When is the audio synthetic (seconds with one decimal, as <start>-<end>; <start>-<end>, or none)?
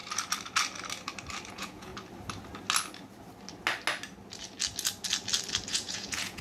1.5-1.9; 5.7-6.4